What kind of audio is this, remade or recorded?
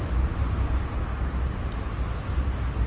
recorded